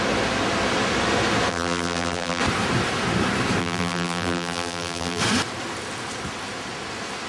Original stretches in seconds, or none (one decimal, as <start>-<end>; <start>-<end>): 0.0-1.5; 2.4-3.6; 5.2-7.3